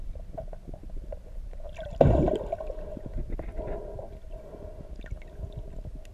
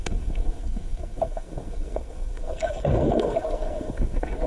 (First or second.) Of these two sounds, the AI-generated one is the second